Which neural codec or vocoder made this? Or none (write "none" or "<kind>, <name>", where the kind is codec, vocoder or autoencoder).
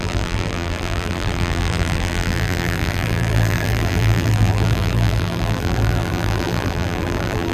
vocoder, BigVGAN v2